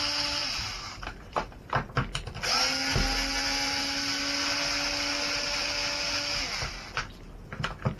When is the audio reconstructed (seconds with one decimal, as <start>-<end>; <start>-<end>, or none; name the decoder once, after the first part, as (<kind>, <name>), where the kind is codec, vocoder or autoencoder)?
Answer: 0.4-1.6 (vocoder, BigVGAN v2)